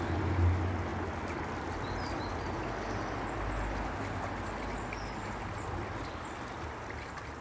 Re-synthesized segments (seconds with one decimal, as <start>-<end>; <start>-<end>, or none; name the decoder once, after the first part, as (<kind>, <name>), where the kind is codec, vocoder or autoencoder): none